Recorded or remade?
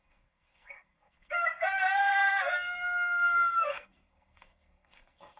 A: remade